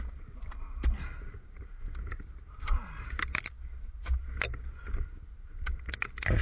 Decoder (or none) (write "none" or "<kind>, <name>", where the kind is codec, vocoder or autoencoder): none